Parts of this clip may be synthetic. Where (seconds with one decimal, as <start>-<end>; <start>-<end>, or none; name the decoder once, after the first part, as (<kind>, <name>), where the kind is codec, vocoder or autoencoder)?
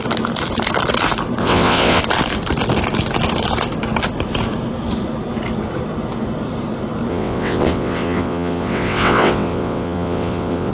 1.4-2.0 (vocoder, WaveNeXt); 7.1-10.7